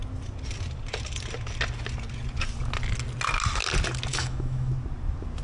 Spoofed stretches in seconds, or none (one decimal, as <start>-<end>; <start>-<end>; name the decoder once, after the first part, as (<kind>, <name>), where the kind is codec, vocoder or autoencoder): 4.1-4.7 (autoencoder, DAC-VAE)